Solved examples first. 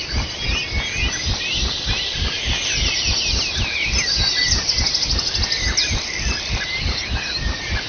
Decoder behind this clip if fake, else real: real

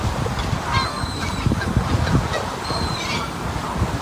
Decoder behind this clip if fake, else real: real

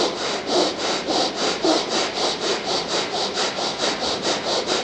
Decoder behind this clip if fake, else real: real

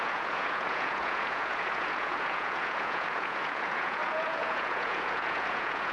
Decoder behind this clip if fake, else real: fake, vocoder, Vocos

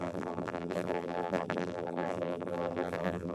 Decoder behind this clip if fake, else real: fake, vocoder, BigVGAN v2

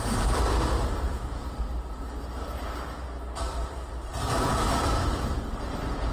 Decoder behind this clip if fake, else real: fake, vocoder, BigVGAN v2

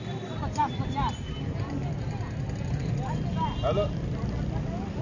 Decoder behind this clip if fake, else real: real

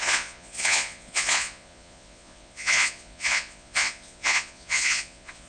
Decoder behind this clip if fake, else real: fake, vocoder, Vocos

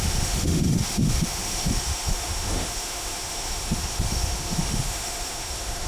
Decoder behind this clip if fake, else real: fake, autoencoder, DAC-VAE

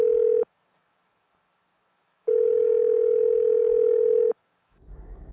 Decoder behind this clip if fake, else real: fake, codec, DAC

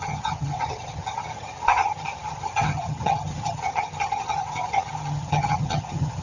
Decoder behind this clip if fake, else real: fake, vocoder, HiFi-GAN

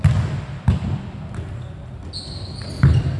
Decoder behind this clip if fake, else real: real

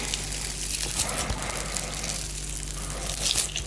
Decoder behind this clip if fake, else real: real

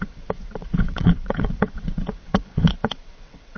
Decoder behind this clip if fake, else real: fake, vocoder, WaveNeXt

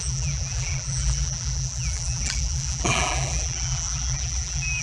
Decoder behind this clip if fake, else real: fake, vocoder, BigVGAN v2